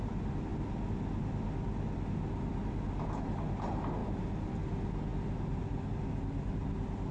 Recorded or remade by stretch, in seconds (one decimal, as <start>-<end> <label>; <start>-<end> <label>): 0.0-7.1 recorded